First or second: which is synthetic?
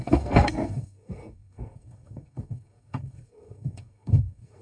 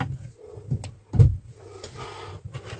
first